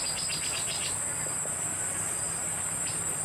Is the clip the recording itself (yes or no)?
yes